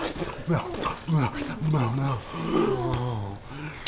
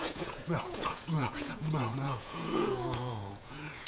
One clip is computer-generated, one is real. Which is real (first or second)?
first